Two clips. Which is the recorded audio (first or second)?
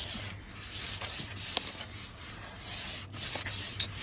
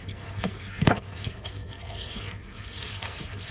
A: first